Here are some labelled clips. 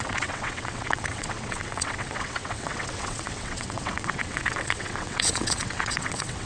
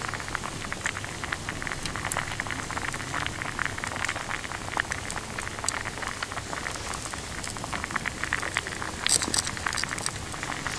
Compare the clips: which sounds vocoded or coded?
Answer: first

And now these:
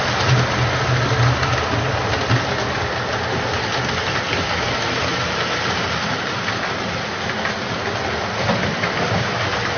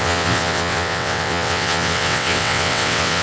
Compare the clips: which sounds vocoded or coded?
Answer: second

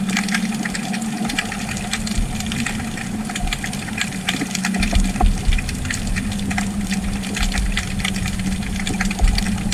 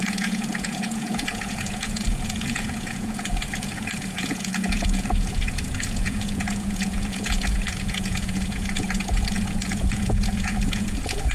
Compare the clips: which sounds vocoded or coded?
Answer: second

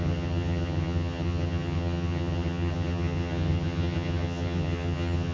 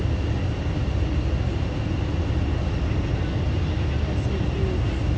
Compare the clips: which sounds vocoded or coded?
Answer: first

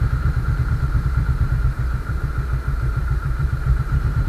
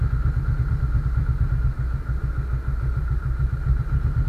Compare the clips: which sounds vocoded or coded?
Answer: first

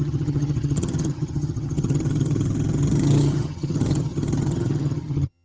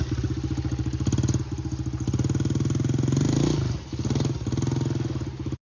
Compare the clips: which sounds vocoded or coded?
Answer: first